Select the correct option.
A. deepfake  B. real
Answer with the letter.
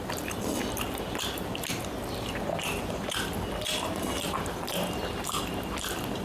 A